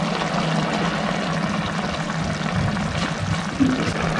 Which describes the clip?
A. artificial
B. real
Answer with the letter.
B